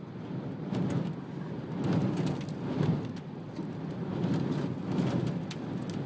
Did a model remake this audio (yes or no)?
no